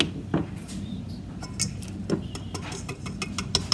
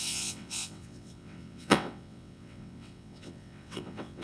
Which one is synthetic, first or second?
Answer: second